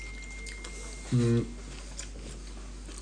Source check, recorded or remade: recorded